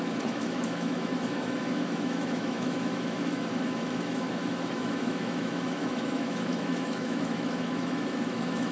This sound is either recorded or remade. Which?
remade